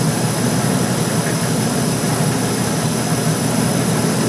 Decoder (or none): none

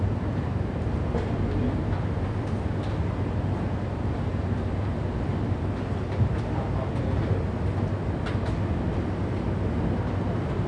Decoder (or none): none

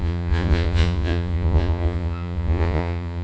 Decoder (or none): vocoder, Vocos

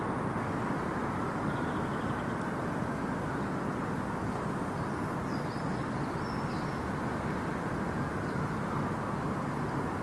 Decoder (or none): none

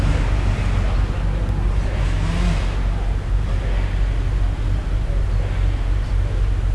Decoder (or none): none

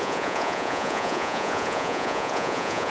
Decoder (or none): vocoder, Vocos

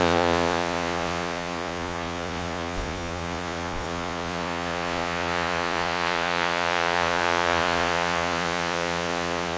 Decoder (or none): vocoder, Vocos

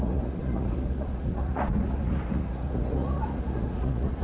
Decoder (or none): vocoder, Vocos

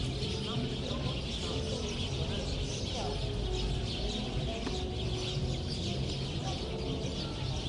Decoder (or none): none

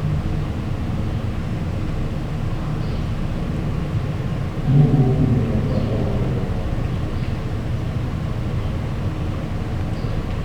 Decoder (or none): none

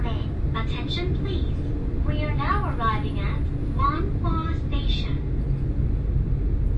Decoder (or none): none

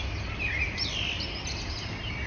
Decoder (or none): none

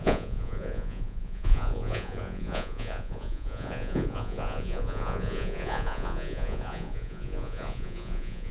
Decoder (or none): vocoder, Vocos